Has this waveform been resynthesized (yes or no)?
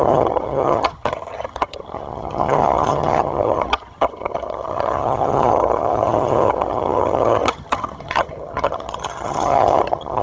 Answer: yes